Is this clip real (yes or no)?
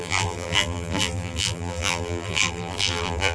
no